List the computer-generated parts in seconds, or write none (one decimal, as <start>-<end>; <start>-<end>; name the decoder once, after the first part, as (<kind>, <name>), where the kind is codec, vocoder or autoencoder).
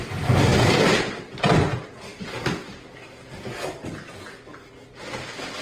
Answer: none